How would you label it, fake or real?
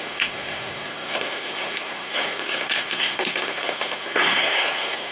fake